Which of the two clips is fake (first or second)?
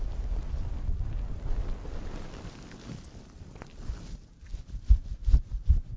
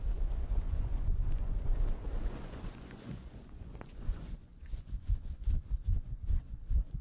second